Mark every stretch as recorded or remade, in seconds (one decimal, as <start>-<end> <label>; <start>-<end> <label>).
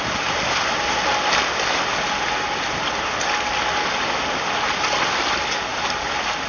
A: 0.0-6.5 recorded